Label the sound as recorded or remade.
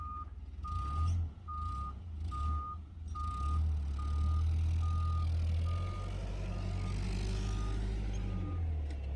recorded